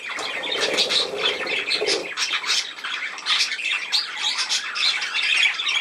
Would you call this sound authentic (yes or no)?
no